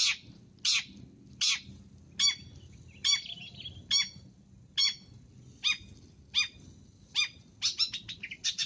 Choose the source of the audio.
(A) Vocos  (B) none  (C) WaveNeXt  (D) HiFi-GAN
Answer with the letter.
B